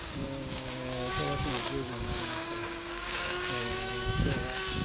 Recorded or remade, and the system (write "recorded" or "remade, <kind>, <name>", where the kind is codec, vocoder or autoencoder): remade, codec, DAC